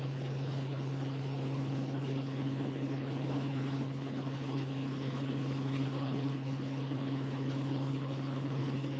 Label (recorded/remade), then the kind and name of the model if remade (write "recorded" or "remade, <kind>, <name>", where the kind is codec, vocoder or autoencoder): remade, codec, HILCodec